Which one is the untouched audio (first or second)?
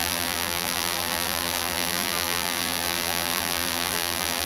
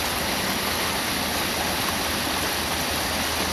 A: second